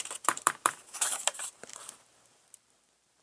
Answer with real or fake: fake